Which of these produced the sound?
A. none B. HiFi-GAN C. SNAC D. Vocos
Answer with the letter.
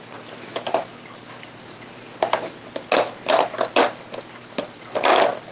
A